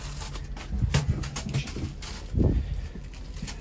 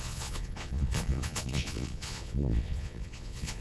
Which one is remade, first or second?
second